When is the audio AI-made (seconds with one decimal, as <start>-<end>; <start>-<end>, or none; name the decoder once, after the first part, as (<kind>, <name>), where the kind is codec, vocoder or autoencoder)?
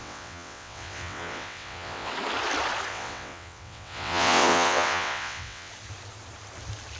0.0-2.1 (vocoder, WaveNeXt); 2.9-5.7